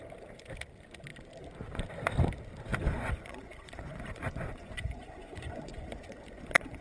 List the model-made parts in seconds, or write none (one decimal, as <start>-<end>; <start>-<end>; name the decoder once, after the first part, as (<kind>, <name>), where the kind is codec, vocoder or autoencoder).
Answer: 2.7-6.8 (vocoder, Vocos)